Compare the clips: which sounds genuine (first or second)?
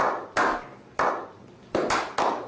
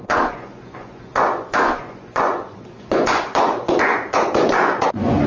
first